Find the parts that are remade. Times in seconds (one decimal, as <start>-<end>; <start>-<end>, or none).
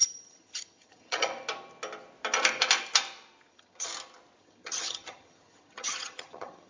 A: 0.0-1.3; 3.5-3.9; 4.4-6.7